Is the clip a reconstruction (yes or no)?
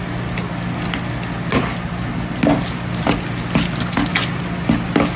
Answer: no